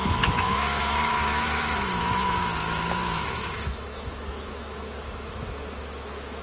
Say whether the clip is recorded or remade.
remade